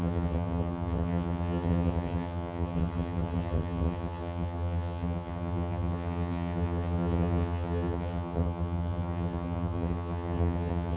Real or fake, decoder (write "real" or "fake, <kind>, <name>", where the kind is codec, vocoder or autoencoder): fake, vocoder, HiFi-GAN